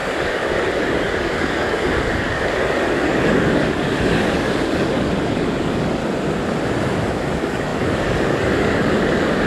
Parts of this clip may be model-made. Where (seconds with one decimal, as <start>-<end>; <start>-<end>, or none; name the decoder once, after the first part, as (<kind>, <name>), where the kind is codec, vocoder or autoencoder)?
0.0-6.0 (codec, DAC); 7.1-9.5